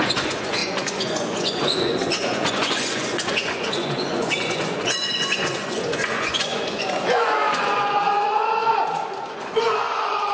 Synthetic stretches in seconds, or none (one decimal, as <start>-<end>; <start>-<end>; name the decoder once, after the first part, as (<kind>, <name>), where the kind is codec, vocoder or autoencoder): 0.0-10.3 (vocoder, Vocos)